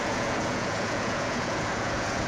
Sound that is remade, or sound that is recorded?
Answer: remade